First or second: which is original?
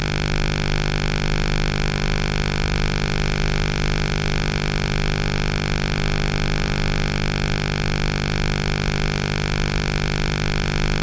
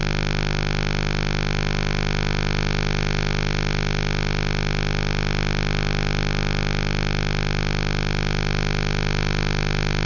second